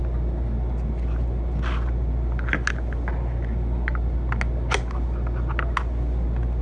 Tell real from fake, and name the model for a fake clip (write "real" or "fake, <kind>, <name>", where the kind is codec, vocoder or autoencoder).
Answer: real